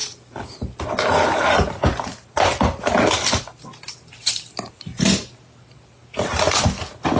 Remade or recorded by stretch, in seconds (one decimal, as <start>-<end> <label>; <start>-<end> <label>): 0.0-7.2 recorded